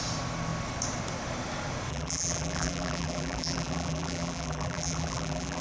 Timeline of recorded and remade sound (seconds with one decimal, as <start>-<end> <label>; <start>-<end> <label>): 0.0-1.9 recorded; 1.9-5.6 remade